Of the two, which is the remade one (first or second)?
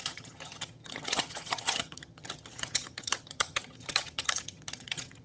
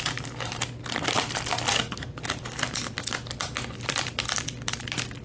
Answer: first